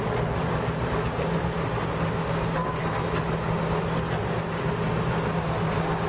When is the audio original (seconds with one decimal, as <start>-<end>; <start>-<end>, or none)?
0.0-6.1